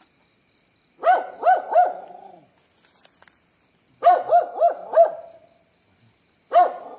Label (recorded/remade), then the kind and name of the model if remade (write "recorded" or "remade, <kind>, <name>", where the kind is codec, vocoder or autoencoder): recorded